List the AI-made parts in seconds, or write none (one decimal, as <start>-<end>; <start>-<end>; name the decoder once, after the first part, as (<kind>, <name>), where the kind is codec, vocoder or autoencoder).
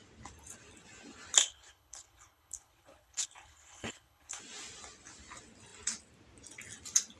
1.4-4.4 (codec, HILCodec)